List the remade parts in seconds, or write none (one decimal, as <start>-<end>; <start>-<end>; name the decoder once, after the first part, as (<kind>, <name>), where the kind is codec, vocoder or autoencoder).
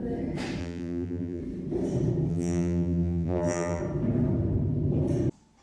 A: 0.6-1.4 (vocoder, BigVGAN v2); 2.3-3.8